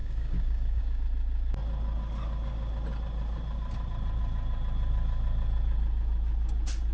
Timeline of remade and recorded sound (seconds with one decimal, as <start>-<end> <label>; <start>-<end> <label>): 0.0-1.0 remade; 1.0-6.9 recorded